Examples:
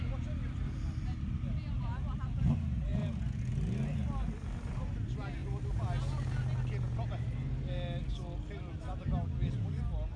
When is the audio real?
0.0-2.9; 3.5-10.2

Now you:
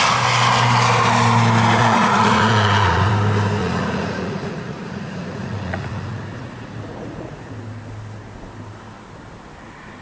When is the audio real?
0.0-1.8; 3.1-3.6; 7.5-10.0

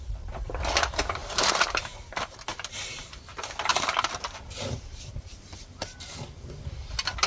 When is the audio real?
0.0-1.2; 2.1-2.5; 3.3-7.3

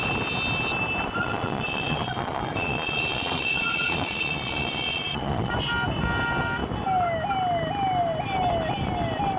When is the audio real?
0.0-1.2; 5.5-9.4

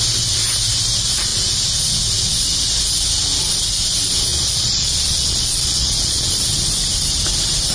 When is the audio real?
0.0-4.3; 6.3-7.7

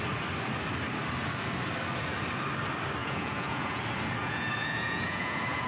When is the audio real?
0.0-3.0; 3.8-4.2

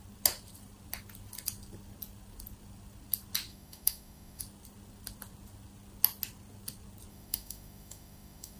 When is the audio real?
0.0-3.5; 4.4-7.1

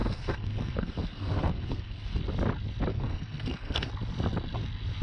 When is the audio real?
2.2-2.9; 3.9-5.0